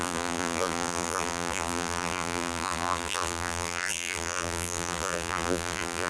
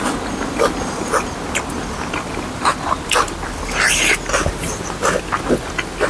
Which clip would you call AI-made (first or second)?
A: first